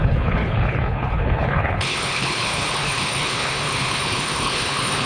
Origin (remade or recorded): remade